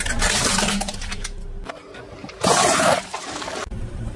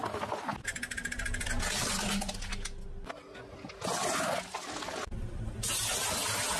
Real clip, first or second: second